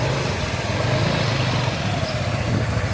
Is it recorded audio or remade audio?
recorded